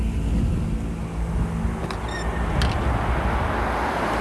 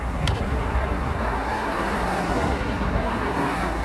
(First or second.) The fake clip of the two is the second